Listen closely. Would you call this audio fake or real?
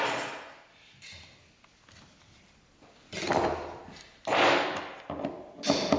real